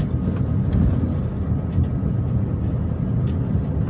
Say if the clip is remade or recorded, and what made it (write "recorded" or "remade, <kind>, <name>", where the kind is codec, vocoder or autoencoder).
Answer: recorded